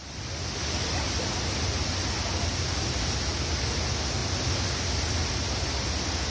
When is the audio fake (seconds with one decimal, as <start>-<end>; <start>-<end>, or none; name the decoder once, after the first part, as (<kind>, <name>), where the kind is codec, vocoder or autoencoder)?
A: none